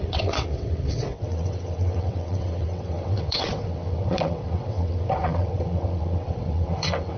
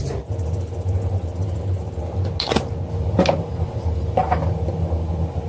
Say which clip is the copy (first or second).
first